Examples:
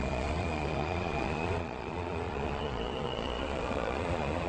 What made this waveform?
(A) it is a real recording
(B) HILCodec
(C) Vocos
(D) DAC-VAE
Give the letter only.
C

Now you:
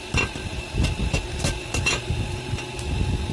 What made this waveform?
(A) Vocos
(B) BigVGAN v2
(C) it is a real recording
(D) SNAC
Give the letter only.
C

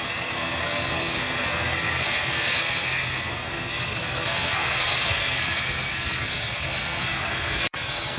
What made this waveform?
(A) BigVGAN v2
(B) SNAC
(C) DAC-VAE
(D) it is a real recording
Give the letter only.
B